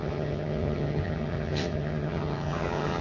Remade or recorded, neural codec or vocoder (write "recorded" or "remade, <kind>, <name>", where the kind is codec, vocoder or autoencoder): remade, vocoder, HiFi-GAN